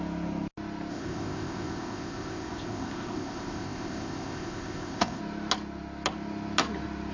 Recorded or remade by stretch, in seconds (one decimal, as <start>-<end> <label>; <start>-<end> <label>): 0.0-0.9 recorded; 0.9-5.2 remade; 5.2-7.1 recorded